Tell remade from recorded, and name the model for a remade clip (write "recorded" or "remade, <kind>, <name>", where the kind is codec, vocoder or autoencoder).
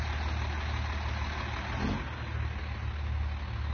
recorded